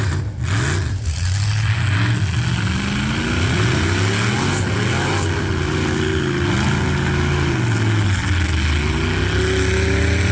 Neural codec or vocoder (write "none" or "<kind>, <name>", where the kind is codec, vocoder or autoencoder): none